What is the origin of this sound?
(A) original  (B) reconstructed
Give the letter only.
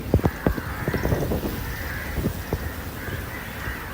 A